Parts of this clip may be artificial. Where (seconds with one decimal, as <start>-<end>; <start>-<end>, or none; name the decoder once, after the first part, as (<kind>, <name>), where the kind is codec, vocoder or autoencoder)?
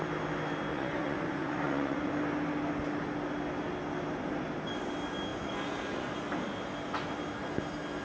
0.7-2.1 (vocoder, Vocos); 5.3-6.1